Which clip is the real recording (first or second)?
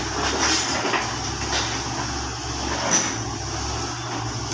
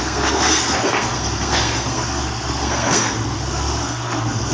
first